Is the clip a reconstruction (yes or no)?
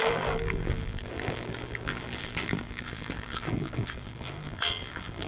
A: yes